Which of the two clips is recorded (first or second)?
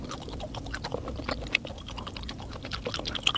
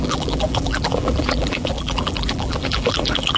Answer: first